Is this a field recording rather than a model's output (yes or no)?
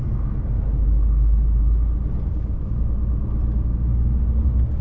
yes